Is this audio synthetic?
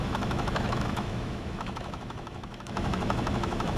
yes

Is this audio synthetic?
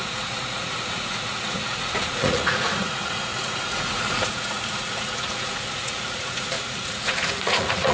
yes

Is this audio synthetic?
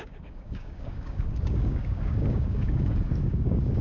yes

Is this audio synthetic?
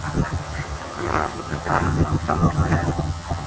yes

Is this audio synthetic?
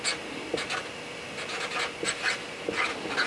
no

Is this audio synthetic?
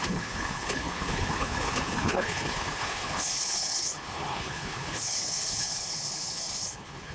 yes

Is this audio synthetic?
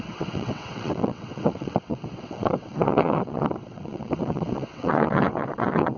yes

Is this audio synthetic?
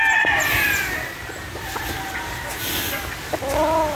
no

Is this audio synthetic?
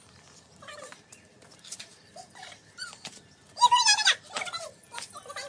no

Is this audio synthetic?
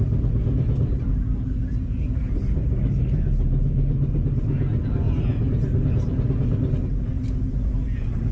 no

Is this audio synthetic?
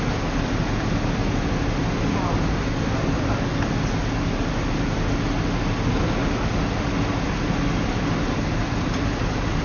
no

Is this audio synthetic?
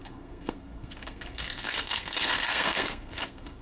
yes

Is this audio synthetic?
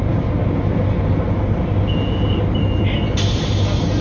no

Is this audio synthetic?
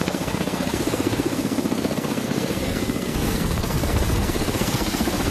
yes